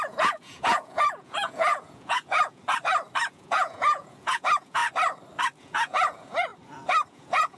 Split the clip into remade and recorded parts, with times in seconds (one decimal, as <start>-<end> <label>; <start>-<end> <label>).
0.0-2.6 remade; 2.6-3.3 recorded; 3.3-4.8 remade; 4.8-5.6 recorded; 5.6-6.5 remade; 6.5-7.1 recorded; 7.1-7.6 remade